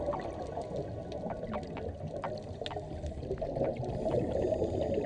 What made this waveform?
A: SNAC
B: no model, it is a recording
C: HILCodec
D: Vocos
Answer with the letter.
B